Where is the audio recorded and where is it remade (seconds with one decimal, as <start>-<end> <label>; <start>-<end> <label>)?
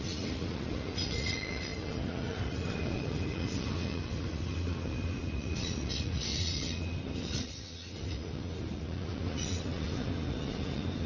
0.0-11.1 remade